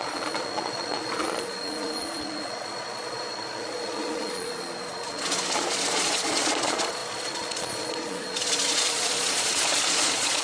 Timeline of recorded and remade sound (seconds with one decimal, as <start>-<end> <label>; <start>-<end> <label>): 0.0-10.4 remade